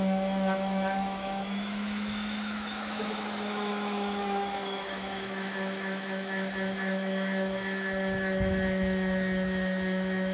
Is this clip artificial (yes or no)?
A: yes